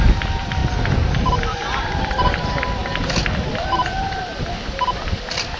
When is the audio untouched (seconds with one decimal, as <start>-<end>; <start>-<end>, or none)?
2.8-3.5